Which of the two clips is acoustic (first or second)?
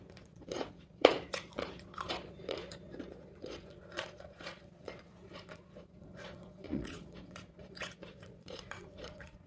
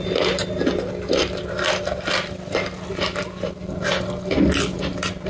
second